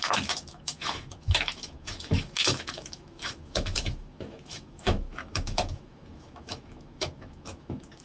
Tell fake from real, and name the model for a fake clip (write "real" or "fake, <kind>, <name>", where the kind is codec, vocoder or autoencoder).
fake, autoencoder, DAC-VAE